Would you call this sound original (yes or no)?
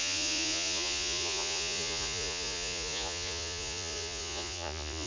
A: no